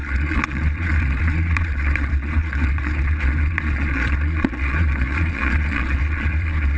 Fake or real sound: fake